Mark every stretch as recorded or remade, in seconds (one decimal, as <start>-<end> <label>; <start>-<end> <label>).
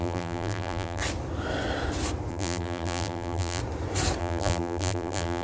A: 0.0-1.0 remade; 1.0-2.3 recorded; 2.3-3.6 remade; 3.6-4.2 recorded; 4.2-5.4 remade